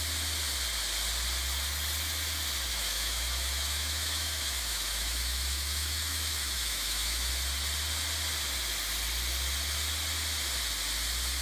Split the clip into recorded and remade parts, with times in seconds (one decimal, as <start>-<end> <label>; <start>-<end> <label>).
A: 0.0-2.7 recorded; 2.7-7.3 remade; 7.3-11.4 recorded

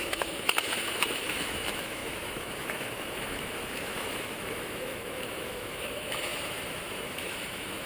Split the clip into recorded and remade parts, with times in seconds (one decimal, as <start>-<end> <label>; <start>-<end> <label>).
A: 0.0-7.9 remade

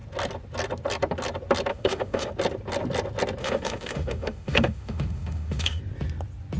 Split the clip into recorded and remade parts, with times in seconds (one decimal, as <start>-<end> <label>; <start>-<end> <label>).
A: 0.0-1.7 recorded; 1.7-2.3 remade; 2.3-3.4 recorded; 3.4-5.8 remade; 5.8-6.6 recorded

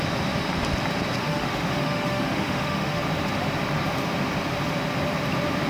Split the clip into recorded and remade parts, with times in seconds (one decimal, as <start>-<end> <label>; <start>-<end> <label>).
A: 0.0-1.2 recorded; 1.2-3.0 remade; 3.0-5.7 recorded

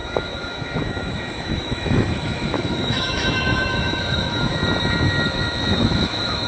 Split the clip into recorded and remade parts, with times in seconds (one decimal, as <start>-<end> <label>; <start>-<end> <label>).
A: 0.0-4.6 remade; 4.6-5.4 recorded; 5.4-6.5 remade